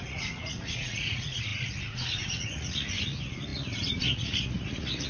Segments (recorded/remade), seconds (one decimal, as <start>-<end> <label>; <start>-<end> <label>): 0.0-5.1 remade